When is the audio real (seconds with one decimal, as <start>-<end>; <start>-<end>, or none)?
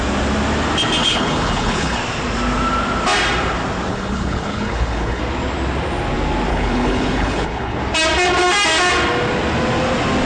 0.0-1.0; 2.0-3.9; 5.2-6.5; 7.8-10.3